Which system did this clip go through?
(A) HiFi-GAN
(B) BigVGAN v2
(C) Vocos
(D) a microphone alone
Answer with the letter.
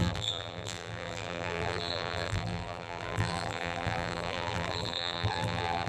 B